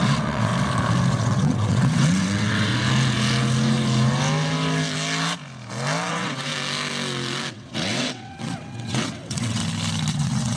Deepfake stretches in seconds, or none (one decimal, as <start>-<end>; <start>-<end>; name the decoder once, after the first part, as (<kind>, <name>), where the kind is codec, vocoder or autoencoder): 0.0-0.5 (vocoder, WaveNeXt); 1.1-2.7; 6.1-6.5; 7.5-9.6; 10.1-10.6